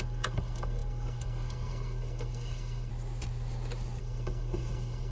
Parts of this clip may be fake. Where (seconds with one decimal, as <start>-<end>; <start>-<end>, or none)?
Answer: 0.0-2.9; 4.0-5.1